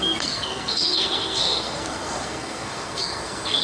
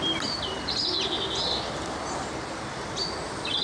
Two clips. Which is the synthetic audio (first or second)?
first